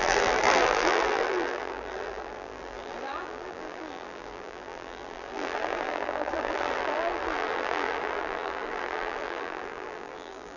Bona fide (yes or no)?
no